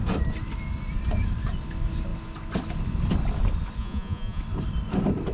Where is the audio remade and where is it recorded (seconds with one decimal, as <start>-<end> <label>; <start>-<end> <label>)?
0.0-3.8 recorded; 3.8-4.4 remade; 4.4-5.3 recorded